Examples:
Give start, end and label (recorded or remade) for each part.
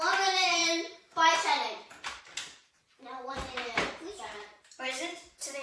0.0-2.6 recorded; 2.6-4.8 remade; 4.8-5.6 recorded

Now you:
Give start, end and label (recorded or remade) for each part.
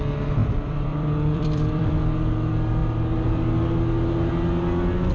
0.0-0.4 recorded; 0.4-1.9 remade; 1.9-5.1 recorded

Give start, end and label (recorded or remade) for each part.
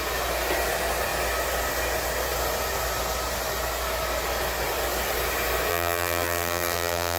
0.0-5.7 recorded; 5.7-7.2 remade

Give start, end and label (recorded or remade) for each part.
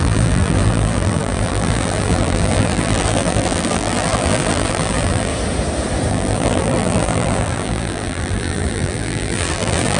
0.0-5.3 remade; 5.3-6.1 recorded; 6.1-10.0 remade